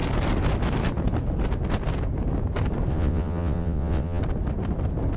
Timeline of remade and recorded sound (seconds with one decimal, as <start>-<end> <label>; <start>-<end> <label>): 0.0-2.9 recorded; 2.9-4.2 remade; 4.2-5.2 recorded